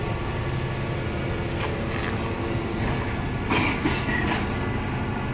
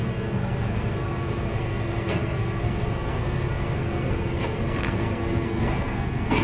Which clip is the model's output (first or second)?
second